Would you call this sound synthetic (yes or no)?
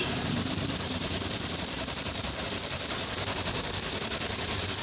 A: yes